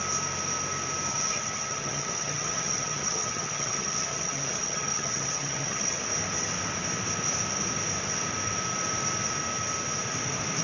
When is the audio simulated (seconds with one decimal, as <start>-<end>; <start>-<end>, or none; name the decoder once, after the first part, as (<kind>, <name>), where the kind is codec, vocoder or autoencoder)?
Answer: 1.1-6.0 (vocoder, HiFi-GAN)